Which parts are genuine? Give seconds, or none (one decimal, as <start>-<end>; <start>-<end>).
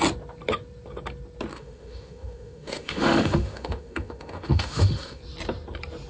0.0-1.5; 5.2-6.1